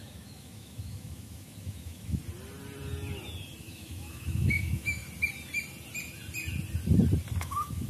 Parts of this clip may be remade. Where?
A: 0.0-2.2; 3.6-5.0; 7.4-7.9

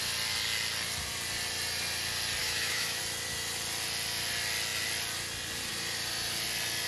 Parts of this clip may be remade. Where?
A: 2.4-3.0

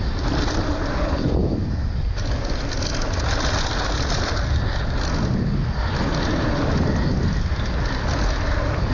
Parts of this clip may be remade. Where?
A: 1.4-1.9

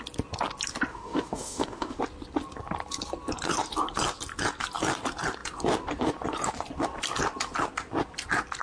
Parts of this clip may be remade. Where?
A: 0.9-2.0

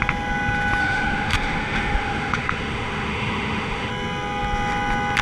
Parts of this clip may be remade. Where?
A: 0.8-3.9